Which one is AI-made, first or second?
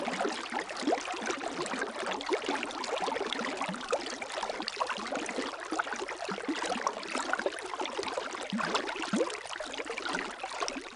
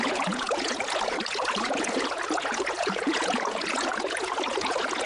second